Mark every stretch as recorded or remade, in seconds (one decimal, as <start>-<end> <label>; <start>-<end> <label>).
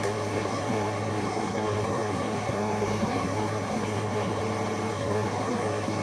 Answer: 0.0-4.4 remade; 4.4-4.9 recorded; 4.9-6.0 remade